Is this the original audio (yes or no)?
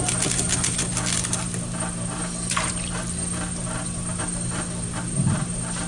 yes